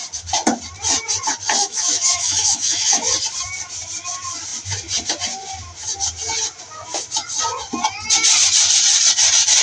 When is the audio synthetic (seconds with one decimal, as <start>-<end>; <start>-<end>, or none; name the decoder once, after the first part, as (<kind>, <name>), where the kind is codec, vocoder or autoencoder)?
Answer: 1.6-3.0 (autoencoder, DAC-VAE)